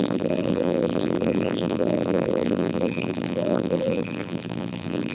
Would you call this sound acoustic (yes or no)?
no